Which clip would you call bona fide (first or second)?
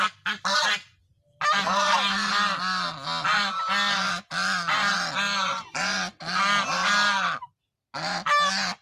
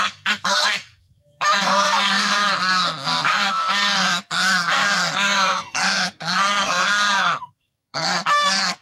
first